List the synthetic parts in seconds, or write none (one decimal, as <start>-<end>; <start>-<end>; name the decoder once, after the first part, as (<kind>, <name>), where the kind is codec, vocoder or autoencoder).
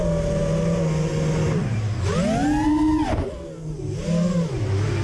none